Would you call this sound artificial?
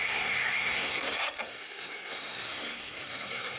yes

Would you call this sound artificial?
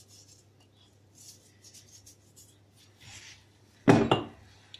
no